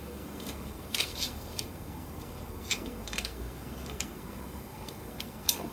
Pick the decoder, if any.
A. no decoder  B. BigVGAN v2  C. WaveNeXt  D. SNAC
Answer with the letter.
D